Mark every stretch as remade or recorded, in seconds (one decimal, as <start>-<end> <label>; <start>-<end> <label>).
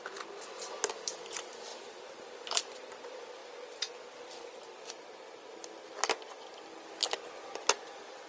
0.0-8.3 recorded